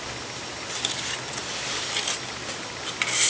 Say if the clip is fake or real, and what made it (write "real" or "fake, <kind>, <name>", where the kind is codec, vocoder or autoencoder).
real